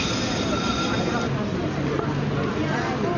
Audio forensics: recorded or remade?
recorded